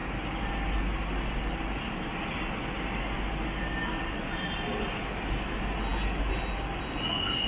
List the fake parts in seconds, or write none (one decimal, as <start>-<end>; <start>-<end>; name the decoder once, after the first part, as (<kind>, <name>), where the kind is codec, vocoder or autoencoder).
none